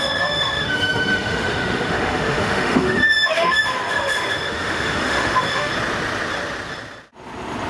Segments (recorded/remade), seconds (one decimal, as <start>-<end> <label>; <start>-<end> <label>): 0.0-5.7 remade; 5.7-7.7 recorded